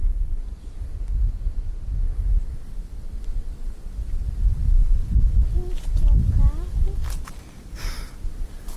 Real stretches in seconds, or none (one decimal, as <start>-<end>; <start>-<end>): 0.0-8.8